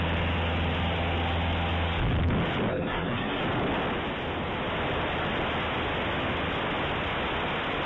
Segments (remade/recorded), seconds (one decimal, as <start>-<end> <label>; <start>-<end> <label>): 0.0-2.7 recorded; 2.7-3.4 remade; 3.4-7.9 recorded